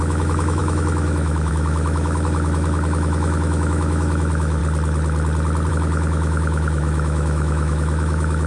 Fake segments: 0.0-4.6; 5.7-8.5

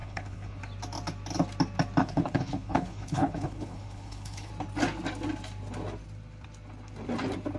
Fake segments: 0.0-0.6; 2.0-4.5